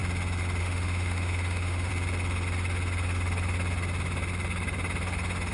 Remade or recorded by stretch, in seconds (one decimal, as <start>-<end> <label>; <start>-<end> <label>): 0.0-0.6 recorded; 0.6-1.9 remade; 1.9-5.5 recorded